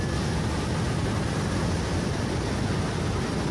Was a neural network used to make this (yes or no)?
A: no